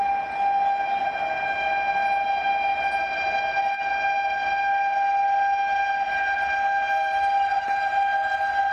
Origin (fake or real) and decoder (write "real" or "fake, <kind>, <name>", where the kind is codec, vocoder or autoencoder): real